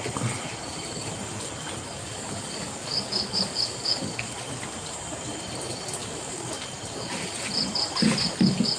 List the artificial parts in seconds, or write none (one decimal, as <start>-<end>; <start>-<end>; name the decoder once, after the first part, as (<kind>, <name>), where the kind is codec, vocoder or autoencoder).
2.0-4.4 (codec, DAC); 6.0-6.5